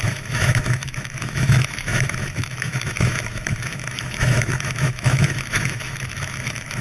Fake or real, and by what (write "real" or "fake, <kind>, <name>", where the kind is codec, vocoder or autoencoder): fake, autoencoder, DAC-VAE